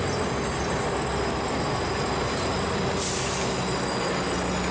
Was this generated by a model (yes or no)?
no